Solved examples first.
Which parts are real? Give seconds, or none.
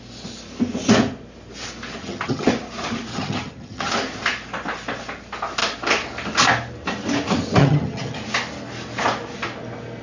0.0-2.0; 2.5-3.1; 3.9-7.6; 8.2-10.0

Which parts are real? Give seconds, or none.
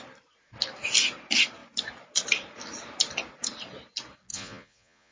0.0-4.3